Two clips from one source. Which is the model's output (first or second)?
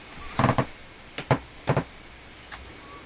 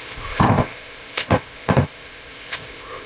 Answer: second